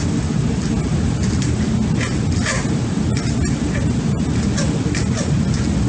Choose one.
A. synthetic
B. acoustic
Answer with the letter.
B